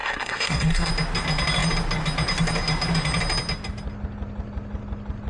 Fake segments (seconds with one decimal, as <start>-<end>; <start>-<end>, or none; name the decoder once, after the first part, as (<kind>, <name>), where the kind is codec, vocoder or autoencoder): 0.0-0.9 (codec, SNAC)